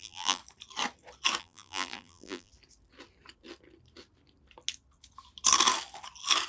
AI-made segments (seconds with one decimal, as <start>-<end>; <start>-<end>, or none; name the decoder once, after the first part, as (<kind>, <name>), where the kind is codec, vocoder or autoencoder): 0.0-0.4 (vocoder, BigVGAN v2); 1.4-2.5